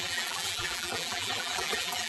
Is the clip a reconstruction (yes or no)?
yes